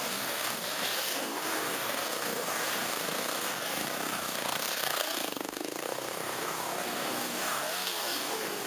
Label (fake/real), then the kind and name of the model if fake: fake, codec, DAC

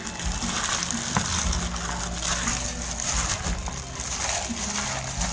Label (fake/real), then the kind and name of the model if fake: real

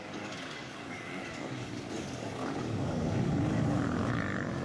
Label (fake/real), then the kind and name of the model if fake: fake, codec, DAC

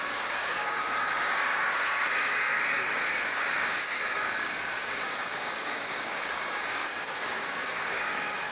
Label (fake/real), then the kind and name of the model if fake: fake, codec, DAC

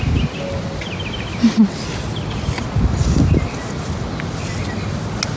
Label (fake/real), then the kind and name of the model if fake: real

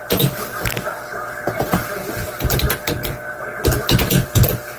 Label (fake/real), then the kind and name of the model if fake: real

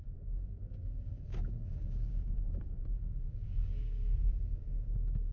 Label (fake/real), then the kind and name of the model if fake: fake, codec, DAC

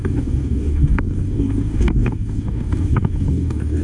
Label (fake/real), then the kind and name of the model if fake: fake, codec, DAC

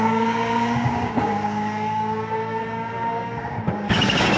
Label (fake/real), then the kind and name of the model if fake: fake, codec, DAC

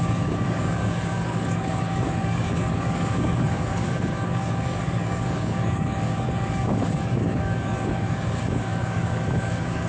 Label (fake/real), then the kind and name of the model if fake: fake, codec, DAC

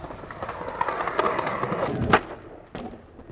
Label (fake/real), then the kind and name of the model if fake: real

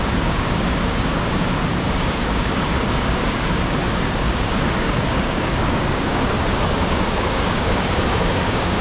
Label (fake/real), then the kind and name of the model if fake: fake, codec, DAC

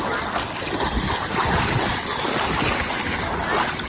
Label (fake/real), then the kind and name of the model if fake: real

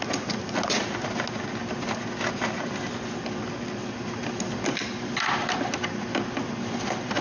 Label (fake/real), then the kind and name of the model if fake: real